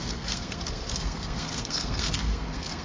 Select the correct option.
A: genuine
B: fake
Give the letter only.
B